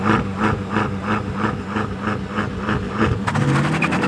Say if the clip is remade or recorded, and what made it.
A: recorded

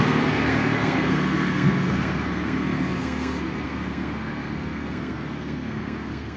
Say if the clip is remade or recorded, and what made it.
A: remade, codec, SNAC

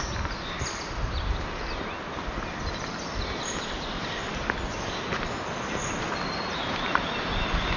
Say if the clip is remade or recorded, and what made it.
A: recorded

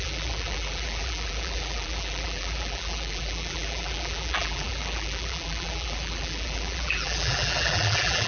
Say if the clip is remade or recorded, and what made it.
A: remade, vocoder, BigVGAN v2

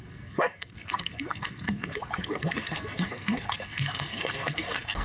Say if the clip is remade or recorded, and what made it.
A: remade, codec, SNAC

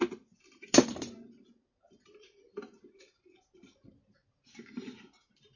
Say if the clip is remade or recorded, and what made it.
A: recorded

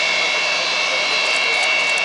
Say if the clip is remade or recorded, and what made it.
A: recorded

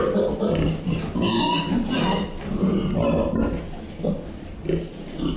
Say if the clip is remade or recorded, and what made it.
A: recorded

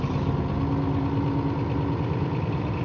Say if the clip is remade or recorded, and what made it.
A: recorded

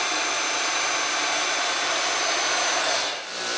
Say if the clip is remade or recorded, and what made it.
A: recorded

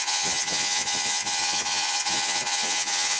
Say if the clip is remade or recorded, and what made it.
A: remade, vocoder, Vocos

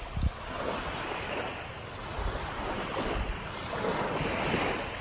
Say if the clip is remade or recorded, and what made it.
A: recorded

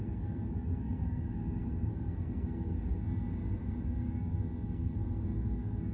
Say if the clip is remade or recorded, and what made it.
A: remade, codec, SNAC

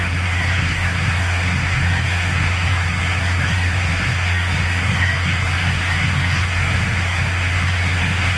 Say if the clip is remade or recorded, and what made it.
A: remade, codec, SNAC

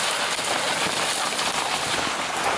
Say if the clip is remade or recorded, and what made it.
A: recorded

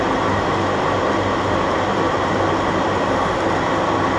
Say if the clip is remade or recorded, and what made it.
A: recorded